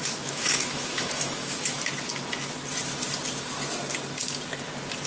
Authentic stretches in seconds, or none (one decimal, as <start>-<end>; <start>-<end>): 1.8-5.1